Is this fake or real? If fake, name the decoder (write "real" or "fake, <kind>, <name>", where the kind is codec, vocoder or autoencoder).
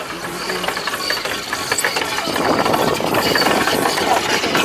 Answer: real